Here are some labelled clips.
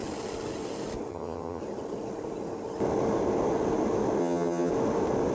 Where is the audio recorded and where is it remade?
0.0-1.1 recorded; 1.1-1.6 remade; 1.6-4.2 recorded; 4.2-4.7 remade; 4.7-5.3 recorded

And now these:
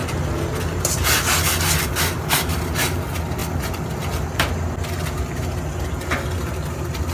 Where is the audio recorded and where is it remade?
0.0-7.1 recorded

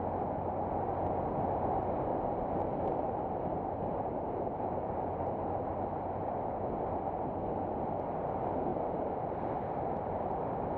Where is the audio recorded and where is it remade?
0.0-2.7 recorded; 2.7-6.1 remade; 6.1-8.7 recorded; 8.7-9.4 remade; 9.4-10.8 recorded

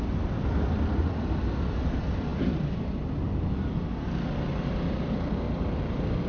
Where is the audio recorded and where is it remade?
0.0-6.3 recorded

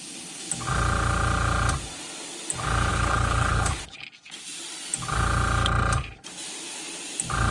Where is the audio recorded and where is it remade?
0.0-2.9 recorded; 2.9-3.8 remade; 3.8-7.5 recorded

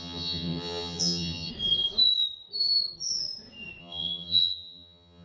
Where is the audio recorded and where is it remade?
0.0-1.5 remade; 1.5-3.8 recorded; 3.8-5.2 remade

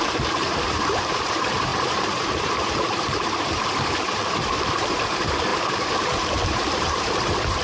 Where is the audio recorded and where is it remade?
0.0-7.6 remade